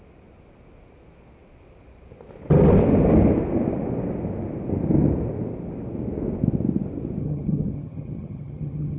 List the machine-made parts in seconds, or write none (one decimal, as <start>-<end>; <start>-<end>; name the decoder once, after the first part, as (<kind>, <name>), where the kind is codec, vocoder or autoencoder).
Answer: 7.2-9.0 (vocoder, HiFi-GAN)